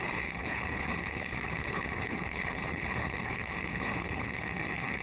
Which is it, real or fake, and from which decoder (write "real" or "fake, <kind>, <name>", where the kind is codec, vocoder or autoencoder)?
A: fake, codec, HILCodec